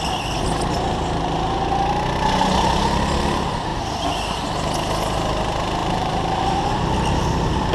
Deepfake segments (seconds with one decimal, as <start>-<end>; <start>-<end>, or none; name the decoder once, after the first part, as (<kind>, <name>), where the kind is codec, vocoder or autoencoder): 5.8-6.4 (vocoder, BigVGAN v2)